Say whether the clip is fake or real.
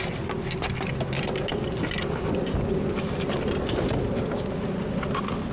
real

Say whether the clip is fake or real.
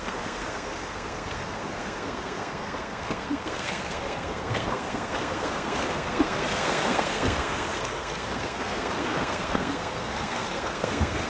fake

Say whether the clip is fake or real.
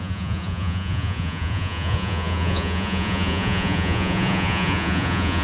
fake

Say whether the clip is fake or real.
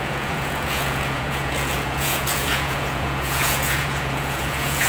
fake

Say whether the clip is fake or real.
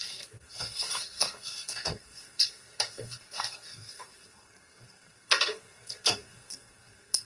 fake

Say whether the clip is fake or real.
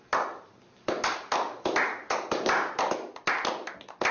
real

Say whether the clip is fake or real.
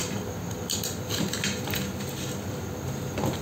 real